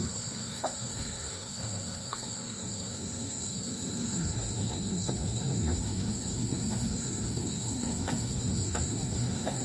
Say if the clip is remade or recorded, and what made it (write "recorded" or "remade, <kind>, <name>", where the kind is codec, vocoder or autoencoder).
remade, codec, SNAC